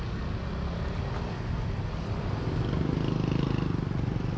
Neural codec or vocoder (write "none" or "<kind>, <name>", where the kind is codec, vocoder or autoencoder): none